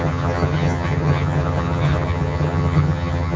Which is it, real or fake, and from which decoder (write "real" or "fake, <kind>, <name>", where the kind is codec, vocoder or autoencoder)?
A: fake, vocoder, HiFi-GAN